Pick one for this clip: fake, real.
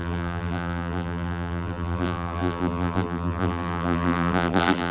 fake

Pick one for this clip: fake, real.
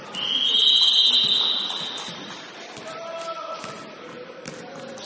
real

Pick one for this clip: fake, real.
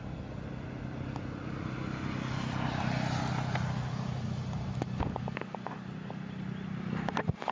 real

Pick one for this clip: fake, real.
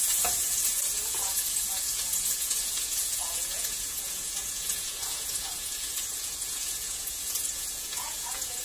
fake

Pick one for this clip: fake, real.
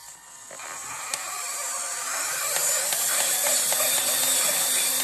real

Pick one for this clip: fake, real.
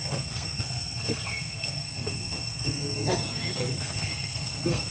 fake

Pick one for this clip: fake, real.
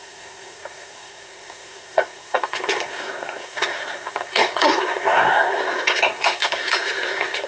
fake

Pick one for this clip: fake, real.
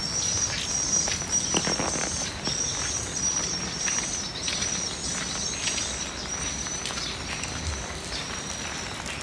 real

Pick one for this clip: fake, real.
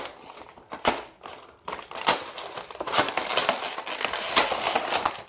real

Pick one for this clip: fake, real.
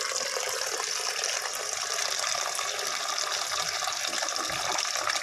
real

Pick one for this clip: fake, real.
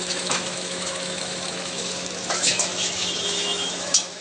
fake